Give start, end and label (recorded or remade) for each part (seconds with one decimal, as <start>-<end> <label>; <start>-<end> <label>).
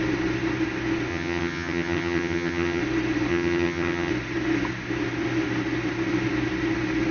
0.0-1.1 recorded; 1.1-2.8 remade; 2.8-3.3 recorded; 3.3-4.1 remade; 4.1-7.1 recorded